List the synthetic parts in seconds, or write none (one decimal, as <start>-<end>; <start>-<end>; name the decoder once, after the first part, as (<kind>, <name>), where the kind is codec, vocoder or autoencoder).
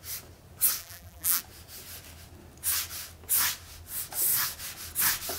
0.8-1.4 (vocoder, BigVGAN v2)